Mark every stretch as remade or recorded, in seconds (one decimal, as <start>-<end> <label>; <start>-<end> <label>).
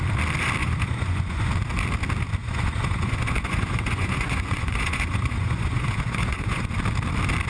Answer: 0.0-0.6 recorded; 0.6-1.5 remade; 1.5-2.4 recorded; 2.4-6.7 remade; 6.7-7.5 recorded